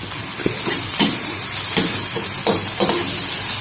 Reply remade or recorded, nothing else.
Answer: recorded